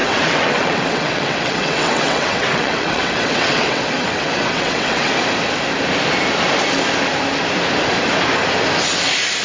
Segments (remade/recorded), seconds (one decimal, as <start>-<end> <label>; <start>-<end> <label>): 0.0-5.1 remade; 5.1-9.4 recorded